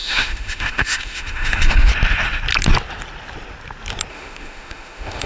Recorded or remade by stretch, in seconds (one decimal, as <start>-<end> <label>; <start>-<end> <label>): 0.0-1.9 remade; 1.9-4.1 recorded; 4.1-5.3 remade